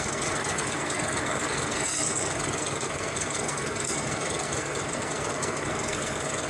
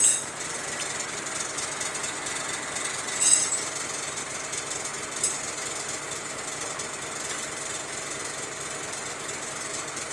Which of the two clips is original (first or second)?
second